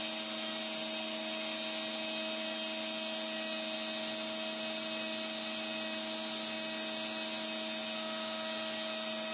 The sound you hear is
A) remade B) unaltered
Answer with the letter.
B